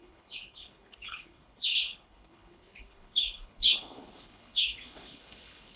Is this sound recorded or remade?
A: remade